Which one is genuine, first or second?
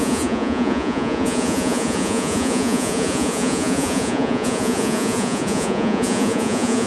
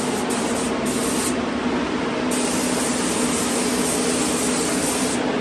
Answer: second